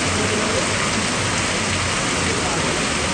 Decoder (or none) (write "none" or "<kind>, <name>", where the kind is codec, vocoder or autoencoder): none